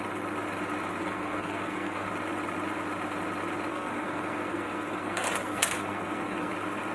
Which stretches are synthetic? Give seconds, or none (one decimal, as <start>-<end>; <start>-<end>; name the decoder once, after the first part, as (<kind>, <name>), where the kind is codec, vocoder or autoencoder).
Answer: 1.0-2.1 (codec, SNAC); 3.7-6.5